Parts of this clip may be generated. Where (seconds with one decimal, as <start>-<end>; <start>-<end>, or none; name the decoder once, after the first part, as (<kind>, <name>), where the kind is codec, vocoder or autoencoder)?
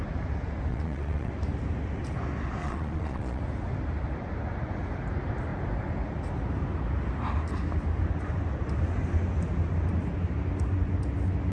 0.7-1.3 (vocoder, Vocos); 2.6-3.4